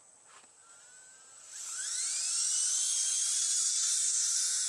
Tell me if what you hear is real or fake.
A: fake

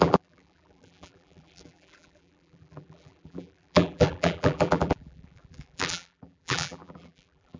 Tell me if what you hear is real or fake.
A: fake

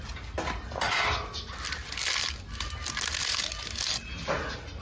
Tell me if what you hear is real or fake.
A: real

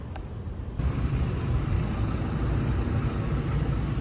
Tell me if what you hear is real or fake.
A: real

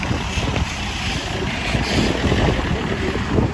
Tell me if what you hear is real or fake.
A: real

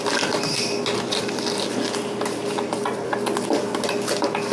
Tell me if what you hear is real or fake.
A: real